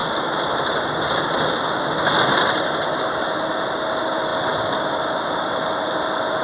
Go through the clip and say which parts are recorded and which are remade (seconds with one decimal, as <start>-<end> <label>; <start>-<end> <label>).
0.0-6.4 recorded